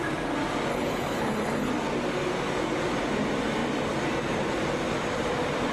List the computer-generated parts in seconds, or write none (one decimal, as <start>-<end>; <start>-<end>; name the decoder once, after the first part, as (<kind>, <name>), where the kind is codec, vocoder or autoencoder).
0.7-1.7 (codec, HILCodec)